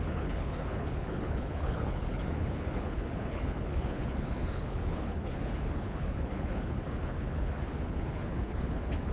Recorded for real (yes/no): no